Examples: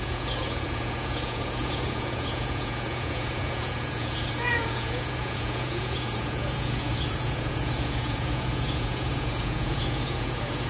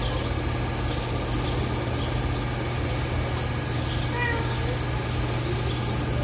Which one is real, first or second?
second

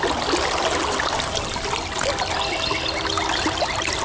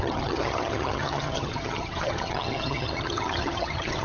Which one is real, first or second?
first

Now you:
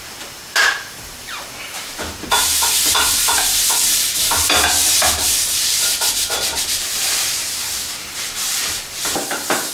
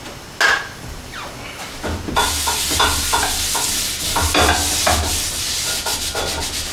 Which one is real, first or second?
second